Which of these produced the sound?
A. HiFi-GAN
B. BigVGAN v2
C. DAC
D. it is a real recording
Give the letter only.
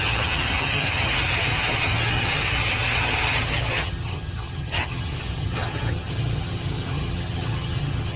A